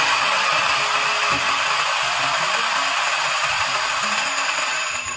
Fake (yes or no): no